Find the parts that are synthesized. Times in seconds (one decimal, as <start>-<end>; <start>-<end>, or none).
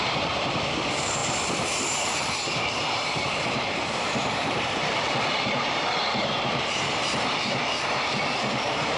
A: 0.0-9.0